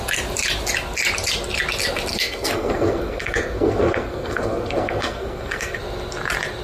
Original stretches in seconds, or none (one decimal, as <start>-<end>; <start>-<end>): 0.0-2.1; 5.8-6.6